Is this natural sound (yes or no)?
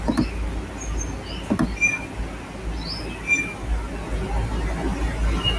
yes